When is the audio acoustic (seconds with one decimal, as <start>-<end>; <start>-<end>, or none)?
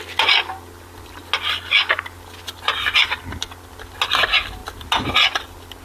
0.0-2.7; 3.2-5.8